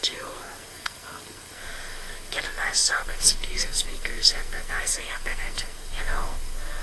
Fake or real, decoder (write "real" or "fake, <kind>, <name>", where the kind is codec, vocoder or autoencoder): fake, codec, SNAC